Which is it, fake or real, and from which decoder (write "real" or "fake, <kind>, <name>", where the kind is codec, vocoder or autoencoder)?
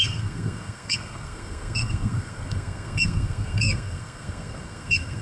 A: fake, codec, SNAC